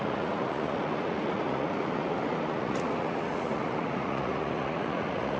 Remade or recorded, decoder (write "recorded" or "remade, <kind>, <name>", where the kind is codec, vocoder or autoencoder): remade, vocoder, Vocos